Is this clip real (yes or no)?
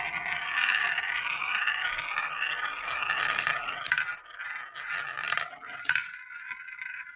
yes